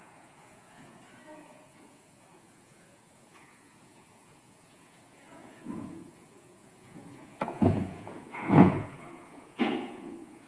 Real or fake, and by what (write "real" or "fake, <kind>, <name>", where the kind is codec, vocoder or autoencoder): fake, vocoder, Vocos